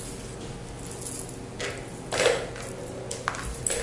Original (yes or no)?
yes